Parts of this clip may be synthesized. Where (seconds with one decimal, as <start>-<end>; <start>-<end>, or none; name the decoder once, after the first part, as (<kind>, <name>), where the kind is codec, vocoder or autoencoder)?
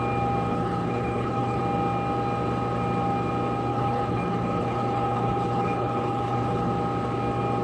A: 0.5-1.6 (codec, HILCodec); 3.7-6.7